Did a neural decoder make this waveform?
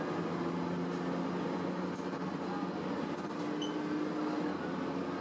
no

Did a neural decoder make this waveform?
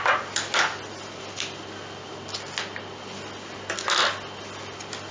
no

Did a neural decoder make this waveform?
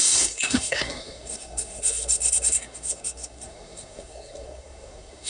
yes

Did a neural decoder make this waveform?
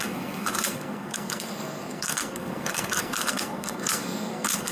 yes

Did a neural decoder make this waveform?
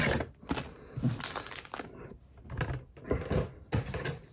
no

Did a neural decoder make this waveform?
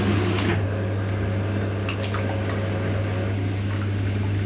no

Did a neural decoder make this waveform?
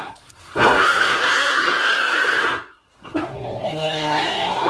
yes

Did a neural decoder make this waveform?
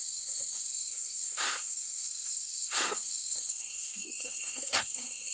yes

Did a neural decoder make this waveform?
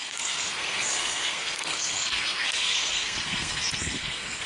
yes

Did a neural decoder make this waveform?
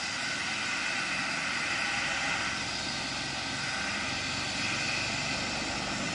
no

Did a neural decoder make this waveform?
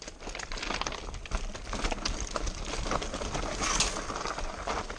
no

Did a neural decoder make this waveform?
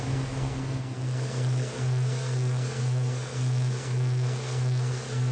yes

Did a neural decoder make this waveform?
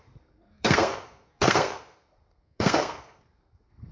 yes